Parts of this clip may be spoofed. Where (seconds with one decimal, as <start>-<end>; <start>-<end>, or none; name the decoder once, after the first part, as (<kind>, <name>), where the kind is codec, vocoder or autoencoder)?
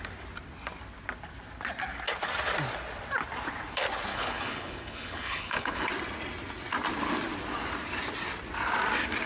4.1-5.9 (codec, HILCodec)